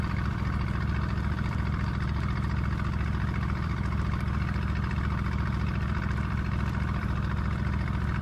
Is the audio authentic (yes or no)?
no